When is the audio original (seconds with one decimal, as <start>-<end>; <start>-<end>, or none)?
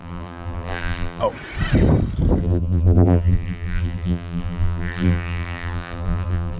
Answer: 1.2-2.4